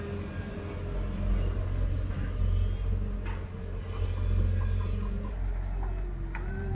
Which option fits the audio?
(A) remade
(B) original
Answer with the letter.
B